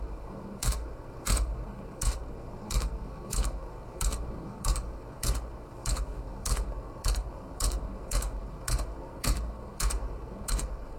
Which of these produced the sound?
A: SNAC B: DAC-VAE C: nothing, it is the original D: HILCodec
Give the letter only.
A